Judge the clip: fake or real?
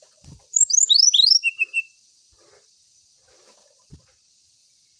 fake